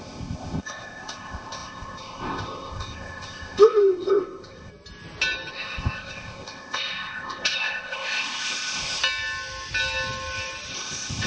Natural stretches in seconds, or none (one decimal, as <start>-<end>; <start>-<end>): 4.7-5.5; 9.0-10.7